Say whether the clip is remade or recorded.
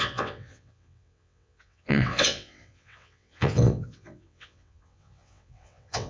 remade